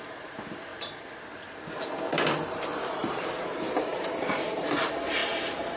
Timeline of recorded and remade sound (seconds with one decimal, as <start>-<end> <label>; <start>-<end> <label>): 0.0-0.7 remade; 0.7-2.5 recorded; 2.5-5.8 remade